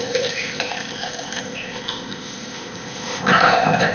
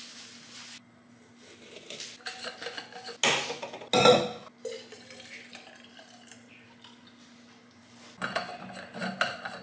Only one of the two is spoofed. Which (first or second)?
first